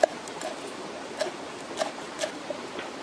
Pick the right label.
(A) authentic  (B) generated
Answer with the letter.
A